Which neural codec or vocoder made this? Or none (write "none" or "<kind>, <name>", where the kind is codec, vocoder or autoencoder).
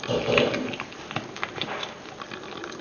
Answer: none